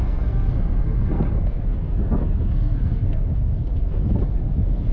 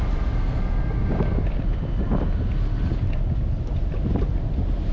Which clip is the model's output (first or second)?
first